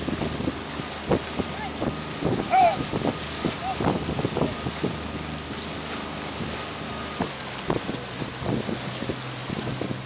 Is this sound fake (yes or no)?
no